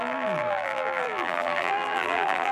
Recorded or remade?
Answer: remade